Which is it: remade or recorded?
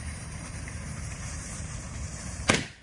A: remade